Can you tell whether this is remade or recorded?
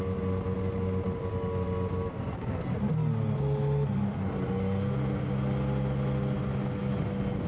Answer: recorded